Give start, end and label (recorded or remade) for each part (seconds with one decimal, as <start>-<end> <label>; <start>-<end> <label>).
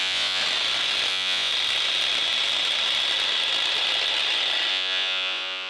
0.0-0.4 remade; 0.4-1.1 recorded; 1.1-1.5 remade; 1.5-4.7 recorded; 4.7-5.7 remade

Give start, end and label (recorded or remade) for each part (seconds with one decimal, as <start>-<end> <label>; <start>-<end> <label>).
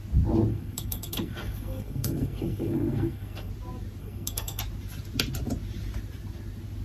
0.0-0.5 recorded; 0.5-3.5 remade; 3.5-4.0 recorded; 4.0-4.6 remade; 4.6-6.8 recorded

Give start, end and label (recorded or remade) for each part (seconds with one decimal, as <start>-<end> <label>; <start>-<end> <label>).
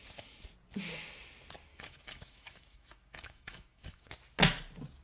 0.0-1.7 recorded; 1.7-4.1 remade; 4.1-5.0 recorded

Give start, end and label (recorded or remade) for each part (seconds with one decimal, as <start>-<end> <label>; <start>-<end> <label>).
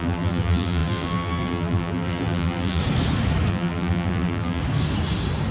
0.0-2.8 remade; 2.8-3.5 recorded; 3.5-4.6 remade; 4.6-5.5 recorded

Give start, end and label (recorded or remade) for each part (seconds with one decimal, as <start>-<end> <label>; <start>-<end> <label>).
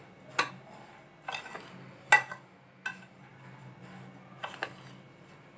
0.0-5.6 recorded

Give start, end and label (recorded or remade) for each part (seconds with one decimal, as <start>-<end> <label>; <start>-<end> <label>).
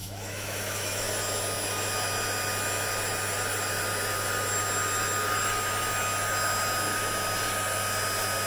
0.0-1.1 remade; 1.1-8.5 recorded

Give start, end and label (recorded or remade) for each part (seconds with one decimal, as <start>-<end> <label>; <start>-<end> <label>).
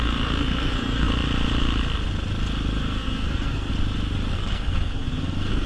0.0-1.1 remade; 1.1-2.8 recorded; 2.8-3.7 remade; 3.7-4.3 recorded; 4.3-5.7 remade